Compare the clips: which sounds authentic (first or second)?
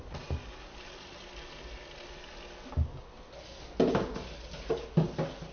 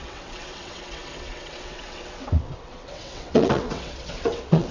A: first